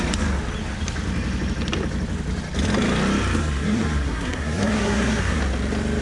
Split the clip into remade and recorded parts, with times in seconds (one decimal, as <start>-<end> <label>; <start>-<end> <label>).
0.0-3.4 recorded; 3.4-5.4 remade; 5.4-6.0 recorded